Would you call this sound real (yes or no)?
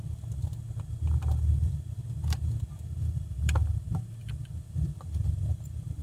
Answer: no